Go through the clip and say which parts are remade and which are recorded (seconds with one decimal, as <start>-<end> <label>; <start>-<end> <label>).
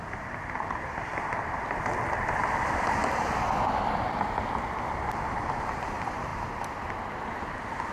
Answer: 0.0-3.0 remade; 3.0-5.7 recorded; 5.7-7.9 remade